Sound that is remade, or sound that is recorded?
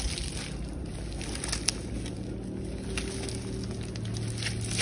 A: recorded